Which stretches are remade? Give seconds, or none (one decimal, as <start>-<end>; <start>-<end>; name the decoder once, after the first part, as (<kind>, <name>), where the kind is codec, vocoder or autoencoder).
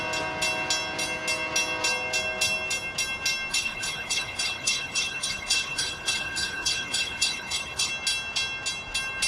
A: 3.5-7.9 (codec, HILCodec)